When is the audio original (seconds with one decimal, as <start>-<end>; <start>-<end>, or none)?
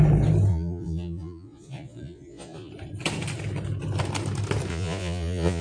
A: 0.0-0.5; 2.7-4.7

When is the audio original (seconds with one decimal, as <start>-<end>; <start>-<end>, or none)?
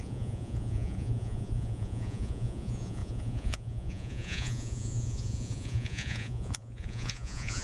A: none